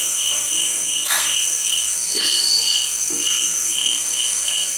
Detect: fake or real fake